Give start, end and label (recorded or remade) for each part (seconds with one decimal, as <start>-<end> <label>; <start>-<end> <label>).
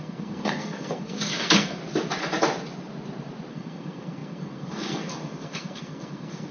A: 0.0-1.8 remade; 1.8-3.5 recorded; 3.5-6.5 remade